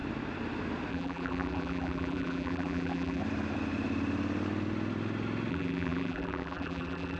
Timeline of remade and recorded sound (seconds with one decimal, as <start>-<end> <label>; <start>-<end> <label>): 0.0-0.9 recorded; 0.9-3.2 remade; 3.2-5.5 recorded; 5.5-7.2 remade